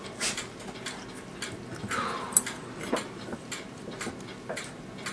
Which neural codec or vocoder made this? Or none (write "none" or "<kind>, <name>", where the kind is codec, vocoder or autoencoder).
none